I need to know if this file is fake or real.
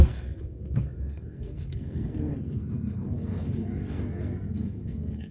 fake